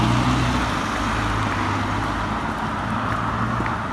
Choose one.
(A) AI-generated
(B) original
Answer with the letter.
B